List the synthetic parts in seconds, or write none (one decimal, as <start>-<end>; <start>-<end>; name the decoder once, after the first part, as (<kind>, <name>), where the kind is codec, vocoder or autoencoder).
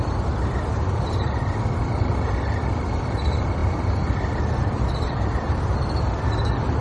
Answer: 0.7-2.6 (vocoder, BigVGAN v2); 3.6-6.8